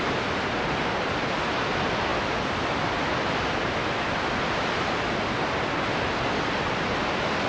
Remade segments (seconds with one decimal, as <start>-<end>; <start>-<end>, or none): none